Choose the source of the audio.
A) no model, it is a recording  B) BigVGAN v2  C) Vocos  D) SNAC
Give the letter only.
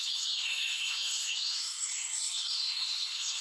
D